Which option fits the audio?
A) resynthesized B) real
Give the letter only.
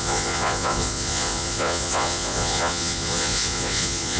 A